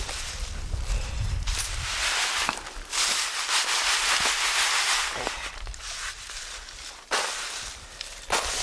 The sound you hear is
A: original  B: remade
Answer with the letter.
A